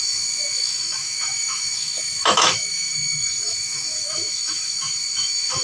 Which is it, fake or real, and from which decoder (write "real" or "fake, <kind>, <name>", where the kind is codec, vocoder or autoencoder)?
fake, autoencoder, DAC-VAE